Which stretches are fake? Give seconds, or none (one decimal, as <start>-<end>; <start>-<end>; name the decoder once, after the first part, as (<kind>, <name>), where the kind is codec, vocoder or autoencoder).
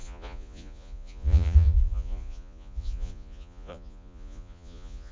0.0-5.1 (vocoder, Vocos)